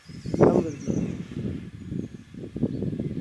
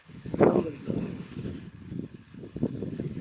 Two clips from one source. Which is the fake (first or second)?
second